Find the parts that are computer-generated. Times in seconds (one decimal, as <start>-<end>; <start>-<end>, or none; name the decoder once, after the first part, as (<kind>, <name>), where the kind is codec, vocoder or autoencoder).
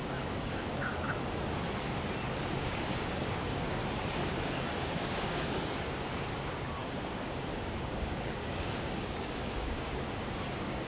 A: 0.0-0.9 (codec, DAC); 2.4-3.8; 4.3-10.9